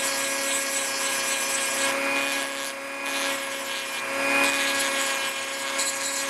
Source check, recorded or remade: recorded